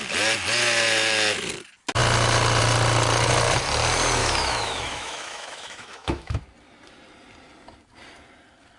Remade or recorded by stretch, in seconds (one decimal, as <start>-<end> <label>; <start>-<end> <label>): 0.0-4.2 recorded; 4.2-6.4 remade; 6.4-8.8 recorded